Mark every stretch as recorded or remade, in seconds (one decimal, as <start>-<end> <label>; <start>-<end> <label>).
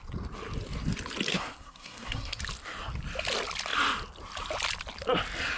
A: 0.0-1.3 recorded; 1.3-2.4 remade; 2.4-5.6 recorded